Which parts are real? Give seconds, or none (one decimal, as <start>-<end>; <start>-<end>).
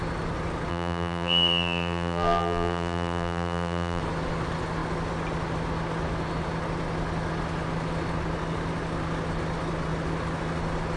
0.0-0.7; 4.0-11.0